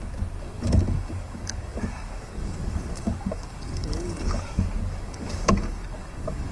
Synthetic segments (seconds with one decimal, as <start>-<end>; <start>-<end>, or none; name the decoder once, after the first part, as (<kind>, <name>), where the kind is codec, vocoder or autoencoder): 0.0-6.5 (codec, DAC)

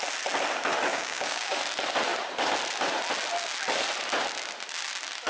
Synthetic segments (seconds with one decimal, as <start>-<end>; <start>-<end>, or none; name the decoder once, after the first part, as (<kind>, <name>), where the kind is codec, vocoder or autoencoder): 0.9-1.6 (codec, DAC)

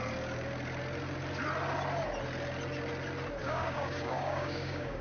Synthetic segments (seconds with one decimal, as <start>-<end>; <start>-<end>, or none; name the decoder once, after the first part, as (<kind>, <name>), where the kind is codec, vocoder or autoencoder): 3.4-5.0 (codec, DAC)

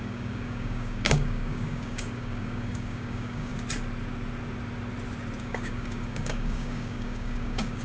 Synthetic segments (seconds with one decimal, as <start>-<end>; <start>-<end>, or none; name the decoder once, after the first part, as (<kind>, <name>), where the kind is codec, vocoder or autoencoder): 0.0-3.5 (codec, DAC); 5.4-7.8

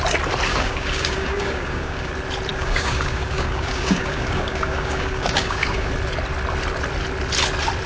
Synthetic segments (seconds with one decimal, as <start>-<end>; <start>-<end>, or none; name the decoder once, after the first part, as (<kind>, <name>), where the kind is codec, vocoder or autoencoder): 0.5-2.1 (codec, DAC); 2.5-5.9

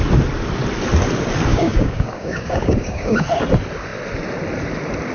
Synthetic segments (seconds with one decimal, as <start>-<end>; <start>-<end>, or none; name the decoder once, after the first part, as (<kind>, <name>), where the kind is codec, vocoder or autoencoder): 1.5-3.2 (codec, DAC)

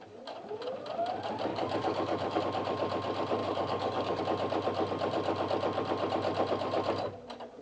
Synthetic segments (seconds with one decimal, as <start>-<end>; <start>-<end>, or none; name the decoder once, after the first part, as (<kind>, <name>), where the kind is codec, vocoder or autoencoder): 1.5-2.4 (codec, DAC); 3.4-4.2